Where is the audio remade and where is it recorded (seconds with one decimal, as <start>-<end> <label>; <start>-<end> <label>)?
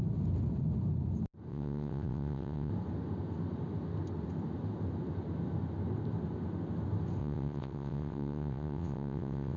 0.0-1.5 recorded; 1.5-2.7 remade; 2.7-7.2 recorded; 7.2-9.6 remade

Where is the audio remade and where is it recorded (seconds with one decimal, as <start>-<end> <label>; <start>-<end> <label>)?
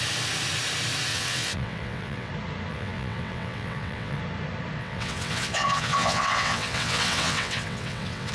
0.0-1.1 recorded; 1.1-2.3 remade; 2.3-2.7 recorded; 2.7-4.2 remade; 4.2-4.8 recorded; 4.8-8.3 remade